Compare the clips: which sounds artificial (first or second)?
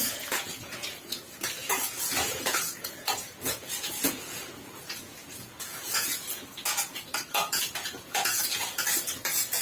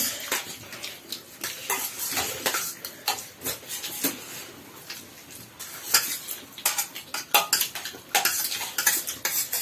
first